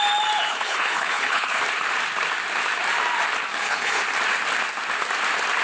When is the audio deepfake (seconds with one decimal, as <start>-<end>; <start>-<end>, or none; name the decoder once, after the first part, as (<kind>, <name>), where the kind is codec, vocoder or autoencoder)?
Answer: 0.5-1.6 (codec, HILCodec); 3.5-4.0